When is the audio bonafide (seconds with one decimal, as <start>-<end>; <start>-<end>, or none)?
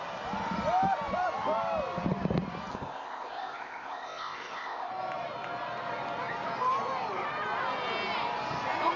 0.0-2.7; 4.9-9.0